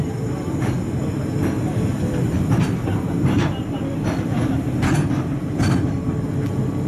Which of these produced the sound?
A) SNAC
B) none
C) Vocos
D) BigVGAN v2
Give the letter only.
B